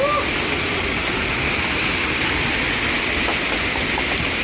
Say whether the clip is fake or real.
real